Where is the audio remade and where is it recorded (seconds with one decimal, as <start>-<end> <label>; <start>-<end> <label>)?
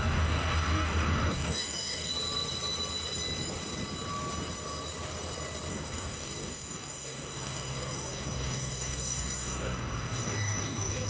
0.0-2.1 remade; 2.1-5.7 recorded; 5.7-11.1 remade